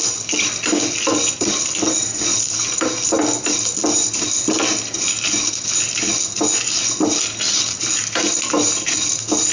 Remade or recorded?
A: recorded